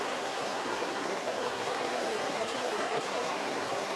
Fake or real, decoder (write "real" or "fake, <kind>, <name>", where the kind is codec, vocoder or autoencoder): fake, codec, SNAC